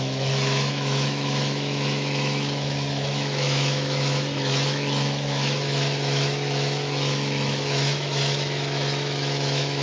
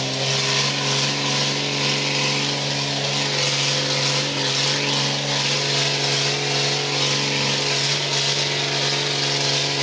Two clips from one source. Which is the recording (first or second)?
second